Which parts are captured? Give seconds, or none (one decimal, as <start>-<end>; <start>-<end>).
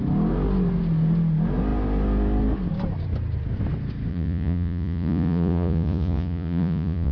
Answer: 0.0-4.1